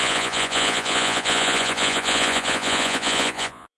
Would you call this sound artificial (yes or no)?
yes